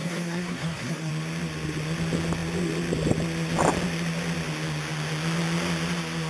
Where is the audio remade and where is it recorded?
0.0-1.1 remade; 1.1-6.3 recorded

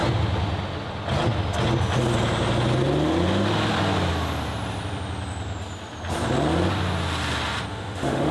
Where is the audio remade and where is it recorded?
0.0-7.7 recorded; 7.7-8.3 remade